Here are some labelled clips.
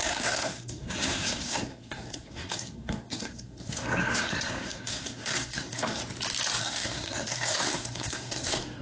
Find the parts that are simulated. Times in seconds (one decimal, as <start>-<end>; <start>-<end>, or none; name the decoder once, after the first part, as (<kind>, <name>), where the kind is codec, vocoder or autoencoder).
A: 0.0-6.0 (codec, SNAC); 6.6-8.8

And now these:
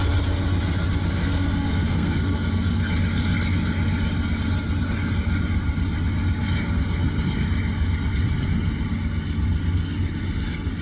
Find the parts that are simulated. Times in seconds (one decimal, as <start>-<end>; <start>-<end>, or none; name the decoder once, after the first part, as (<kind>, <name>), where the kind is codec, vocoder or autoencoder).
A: 1.2-2.8 (codec, SNAC)

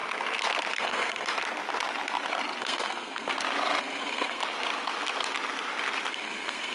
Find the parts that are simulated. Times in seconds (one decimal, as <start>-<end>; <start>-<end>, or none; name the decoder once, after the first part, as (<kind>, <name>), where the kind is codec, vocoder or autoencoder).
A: 0.7-1.3 (codec, SNAC); 2.6-3.3; 3.8-4.4; 6.1-6.7

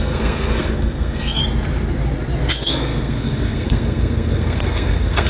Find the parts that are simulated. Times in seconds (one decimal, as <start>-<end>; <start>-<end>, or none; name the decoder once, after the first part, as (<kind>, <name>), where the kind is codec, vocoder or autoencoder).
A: 0.0-1.4 (codec, SNAC); 2.5-5.3